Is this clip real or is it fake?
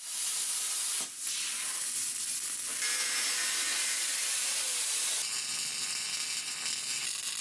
real